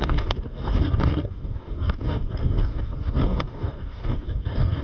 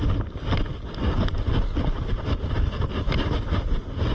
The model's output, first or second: first